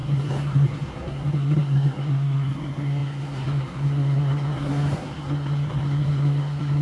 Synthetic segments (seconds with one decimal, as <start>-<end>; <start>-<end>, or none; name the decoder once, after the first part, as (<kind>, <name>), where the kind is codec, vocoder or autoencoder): 0.0-6.8 (codec, SNAC)